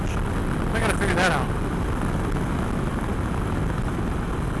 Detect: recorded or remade recorded